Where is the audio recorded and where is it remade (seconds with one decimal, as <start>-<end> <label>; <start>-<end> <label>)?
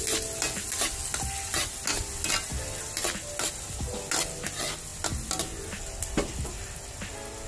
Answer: 0.0-7.5 recorded